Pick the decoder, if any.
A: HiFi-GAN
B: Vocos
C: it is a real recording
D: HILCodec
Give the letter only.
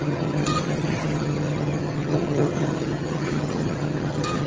A